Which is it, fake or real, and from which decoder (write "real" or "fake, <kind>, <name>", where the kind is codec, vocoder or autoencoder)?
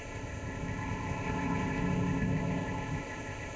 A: fake, codec, ZipCodec